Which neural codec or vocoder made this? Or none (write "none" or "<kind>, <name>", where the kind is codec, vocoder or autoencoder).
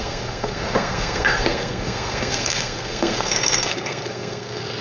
codec, SNAC